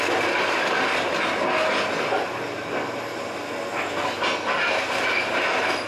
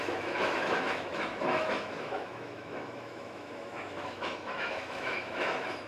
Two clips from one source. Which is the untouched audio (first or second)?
first